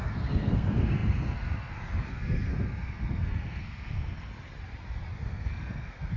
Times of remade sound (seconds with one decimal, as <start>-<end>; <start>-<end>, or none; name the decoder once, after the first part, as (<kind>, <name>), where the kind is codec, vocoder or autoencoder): 0.0-4.3 (codec, SNAC); 5.1-6.2

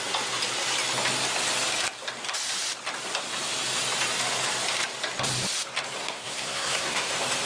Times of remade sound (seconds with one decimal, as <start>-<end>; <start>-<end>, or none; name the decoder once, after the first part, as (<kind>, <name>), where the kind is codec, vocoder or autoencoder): 6.0-7.1 (codec, SNAC)

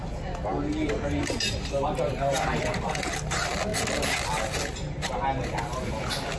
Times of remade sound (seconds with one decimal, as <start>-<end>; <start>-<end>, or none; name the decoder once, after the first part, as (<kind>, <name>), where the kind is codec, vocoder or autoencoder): none

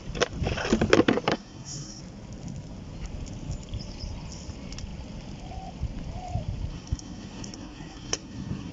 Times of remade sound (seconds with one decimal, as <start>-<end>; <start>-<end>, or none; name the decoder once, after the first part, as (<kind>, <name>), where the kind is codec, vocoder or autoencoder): 1.3-2.0 (codec, SNAC); 6.7-8.7

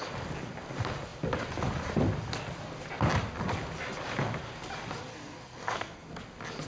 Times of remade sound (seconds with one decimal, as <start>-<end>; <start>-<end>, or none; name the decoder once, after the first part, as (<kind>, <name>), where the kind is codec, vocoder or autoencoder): 5.1-6.1 (codec, SNAC)

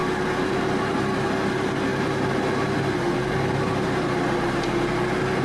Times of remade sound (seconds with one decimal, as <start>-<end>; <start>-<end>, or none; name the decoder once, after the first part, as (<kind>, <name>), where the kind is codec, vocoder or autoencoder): none

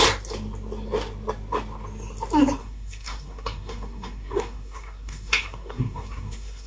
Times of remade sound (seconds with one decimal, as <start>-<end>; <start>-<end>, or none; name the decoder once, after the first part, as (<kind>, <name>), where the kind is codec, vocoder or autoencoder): 2.6-6.7 (codec, SNAC)

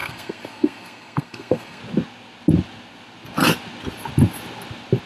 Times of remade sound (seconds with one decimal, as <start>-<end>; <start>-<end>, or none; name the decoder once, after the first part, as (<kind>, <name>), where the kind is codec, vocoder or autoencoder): 0.0-1.8 (codec, SNAC)